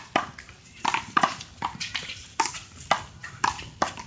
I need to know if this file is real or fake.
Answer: real